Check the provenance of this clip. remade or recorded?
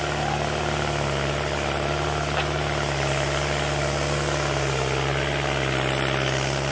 recorded